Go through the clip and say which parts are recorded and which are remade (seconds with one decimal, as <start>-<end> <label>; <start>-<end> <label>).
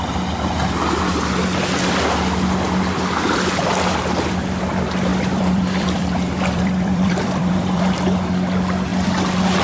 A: 0.0-5.1 recorded; 5.1-7.8 remade; 7.8-9.6 recorded